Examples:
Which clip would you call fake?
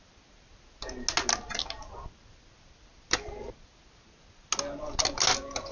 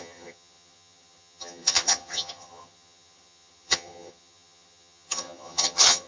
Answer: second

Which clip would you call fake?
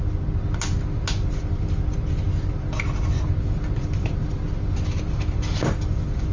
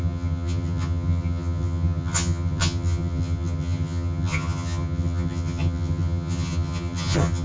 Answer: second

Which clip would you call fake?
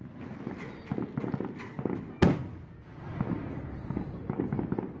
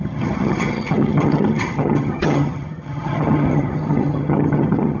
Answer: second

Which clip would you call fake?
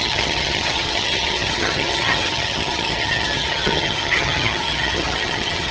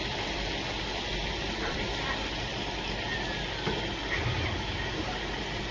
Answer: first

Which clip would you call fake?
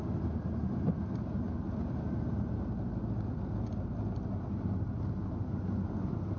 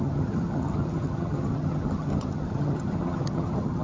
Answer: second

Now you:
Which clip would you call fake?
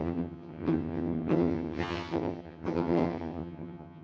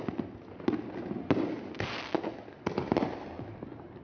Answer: first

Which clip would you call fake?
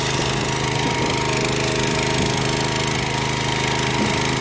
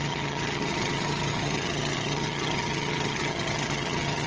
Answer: second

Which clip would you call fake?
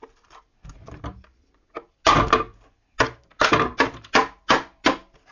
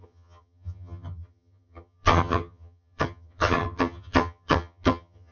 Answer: second